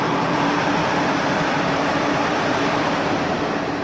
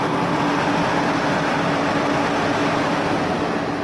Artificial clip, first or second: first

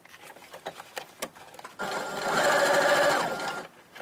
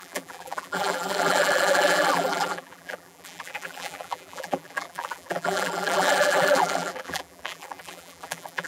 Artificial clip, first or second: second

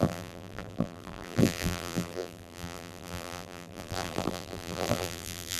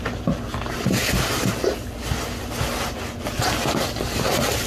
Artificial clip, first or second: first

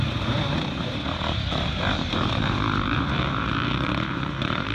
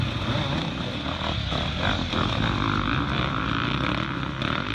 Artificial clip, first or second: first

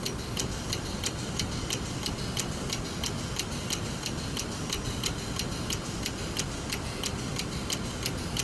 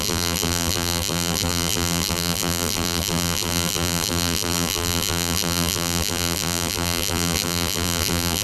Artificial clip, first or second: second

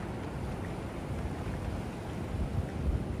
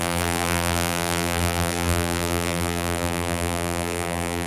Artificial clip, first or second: second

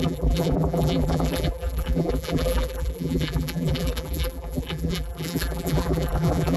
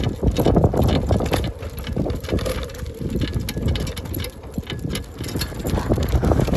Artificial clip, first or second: first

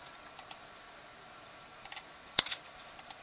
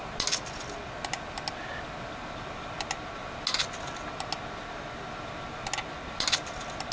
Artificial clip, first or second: first